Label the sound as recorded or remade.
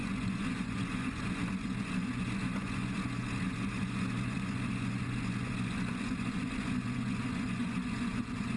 remade